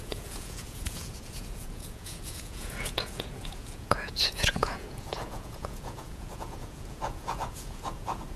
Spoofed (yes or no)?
yes